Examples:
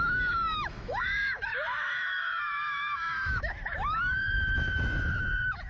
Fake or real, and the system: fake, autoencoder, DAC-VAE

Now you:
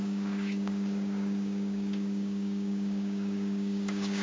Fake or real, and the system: fake, codec, DAC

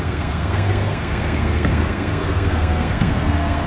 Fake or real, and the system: fake, codec, SNAC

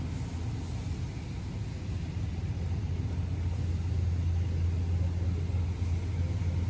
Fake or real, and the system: real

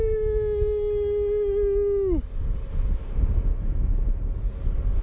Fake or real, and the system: real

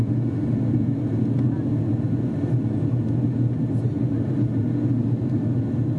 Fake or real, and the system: real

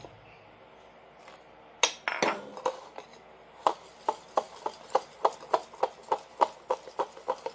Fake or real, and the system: real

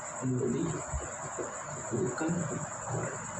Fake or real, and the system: real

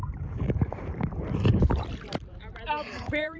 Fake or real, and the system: fake, vocoder, BigVGAN v2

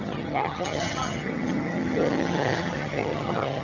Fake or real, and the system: fake, vocoder, HiFi-GAN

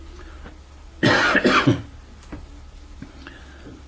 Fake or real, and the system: real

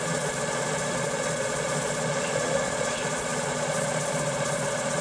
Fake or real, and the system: fake, vocoder, Vocos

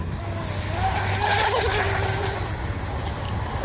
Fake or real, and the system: real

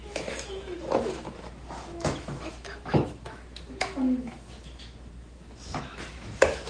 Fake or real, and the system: fake, autoencoder, DAC-VAE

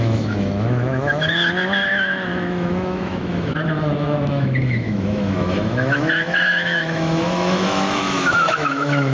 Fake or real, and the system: fake, autoencoder, DAC-VAE